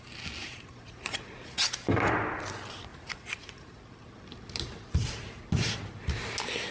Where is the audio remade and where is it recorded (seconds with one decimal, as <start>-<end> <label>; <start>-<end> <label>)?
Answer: 0.0-0.4 recorded; 0.4-1.7 remade; 1.7-2.9 recorded; 2.9-3.8 remade; 3.8-6.7 recorded